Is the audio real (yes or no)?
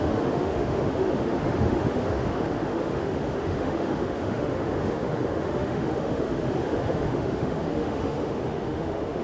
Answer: no